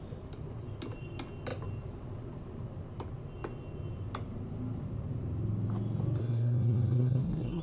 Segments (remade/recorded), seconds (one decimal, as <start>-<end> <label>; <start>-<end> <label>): 0.0-6.2 recorded; 6.2-7.6 remade